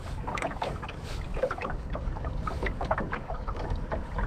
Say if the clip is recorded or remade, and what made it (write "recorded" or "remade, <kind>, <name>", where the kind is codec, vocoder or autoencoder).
remade, codec, DAC